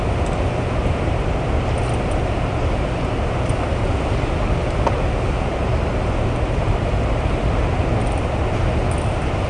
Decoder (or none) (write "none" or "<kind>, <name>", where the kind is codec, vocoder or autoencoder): none